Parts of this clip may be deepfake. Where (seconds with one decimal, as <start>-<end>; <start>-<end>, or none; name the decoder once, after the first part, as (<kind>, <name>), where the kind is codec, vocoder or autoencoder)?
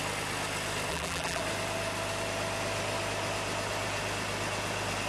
0.9-1.4 (vocoder, BigVGAN v2)